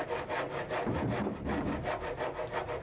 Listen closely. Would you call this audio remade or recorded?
recorded